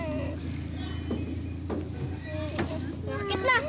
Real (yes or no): yes